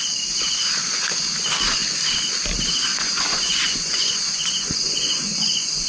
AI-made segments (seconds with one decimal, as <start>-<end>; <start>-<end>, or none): 2.9-5.9